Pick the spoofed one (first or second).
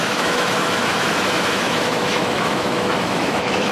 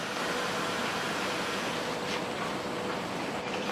first